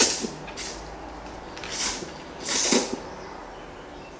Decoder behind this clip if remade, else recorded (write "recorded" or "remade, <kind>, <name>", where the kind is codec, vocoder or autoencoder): recorded